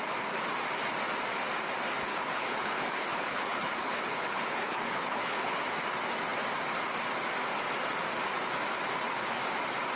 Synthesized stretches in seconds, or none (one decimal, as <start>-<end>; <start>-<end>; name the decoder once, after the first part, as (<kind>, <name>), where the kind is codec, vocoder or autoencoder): 2.1-5.6 (codec, HILCodec)